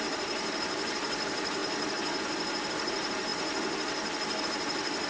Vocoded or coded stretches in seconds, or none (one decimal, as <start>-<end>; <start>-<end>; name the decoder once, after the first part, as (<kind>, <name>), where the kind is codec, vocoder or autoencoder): 0.0-1.6 (vocoder, BigVGAN v2); 2.7-3.3; 4.4-5.1